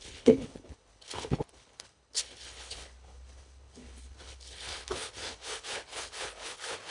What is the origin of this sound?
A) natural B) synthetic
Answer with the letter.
B